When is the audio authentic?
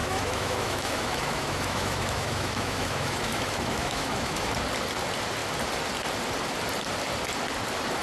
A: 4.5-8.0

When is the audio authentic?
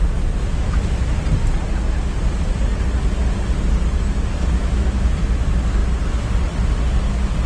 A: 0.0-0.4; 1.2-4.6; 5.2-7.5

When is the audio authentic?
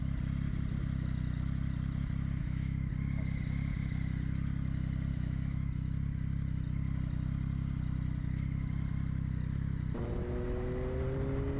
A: 0.0-2.4; 2.9-5.1; 5.7-11.6